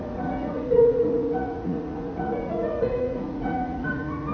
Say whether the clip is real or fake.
fake